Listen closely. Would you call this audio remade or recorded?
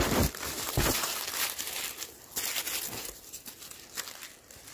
recorded